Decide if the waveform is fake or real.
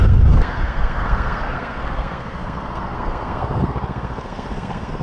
fake